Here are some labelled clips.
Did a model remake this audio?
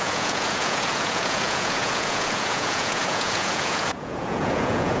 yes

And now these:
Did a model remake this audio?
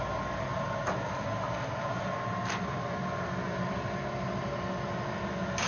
no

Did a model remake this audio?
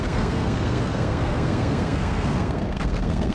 yes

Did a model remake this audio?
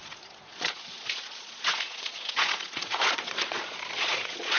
yes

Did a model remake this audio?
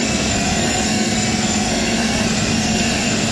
yes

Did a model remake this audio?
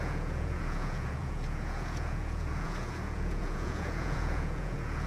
yes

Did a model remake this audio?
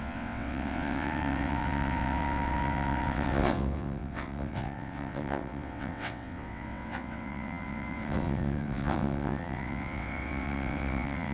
yes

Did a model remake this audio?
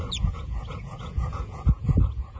yes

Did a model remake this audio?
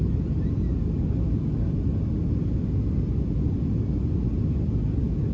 no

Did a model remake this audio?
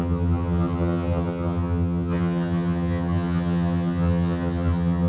yes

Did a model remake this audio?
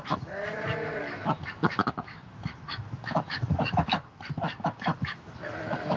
yes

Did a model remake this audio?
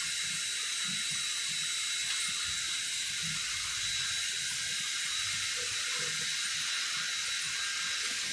no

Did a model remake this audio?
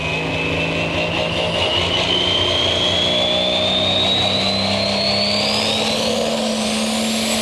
no